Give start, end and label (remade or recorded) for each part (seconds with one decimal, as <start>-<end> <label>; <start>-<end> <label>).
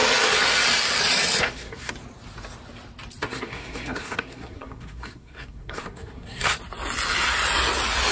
0.0-1.4 recorded; 1.4-1.9 remade; 1.9-3.3 recorded; 3.3-6.6 remade; 6.6-8.1 recorded